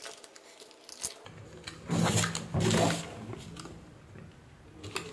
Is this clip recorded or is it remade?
recorded